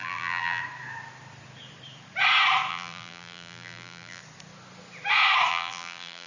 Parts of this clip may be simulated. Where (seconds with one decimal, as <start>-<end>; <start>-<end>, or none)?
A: 0.0-0.6; 2.7-4.2; 5.5-6.3